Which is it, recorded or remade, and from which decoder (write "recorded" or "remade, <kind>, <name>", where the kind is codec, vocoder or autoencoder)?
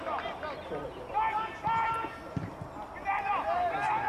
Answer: recorded